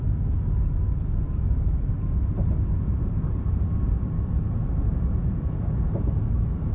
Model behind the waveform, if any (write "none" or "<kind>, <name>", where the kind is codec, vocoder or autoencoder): vocoder, BigVGAN v2